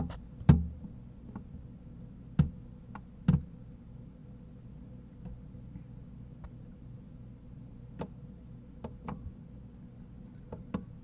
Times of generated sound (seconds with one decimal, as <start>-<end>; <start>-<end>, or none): none